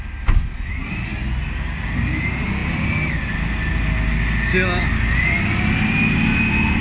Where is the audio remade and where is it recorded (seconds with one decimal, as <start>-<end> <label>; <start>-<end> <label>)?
0.0-6.8 recorded